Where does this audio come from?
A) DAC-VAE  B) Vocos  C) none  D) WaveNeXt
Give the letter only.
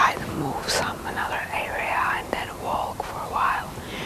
C